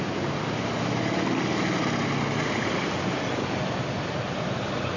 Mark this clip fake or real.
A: real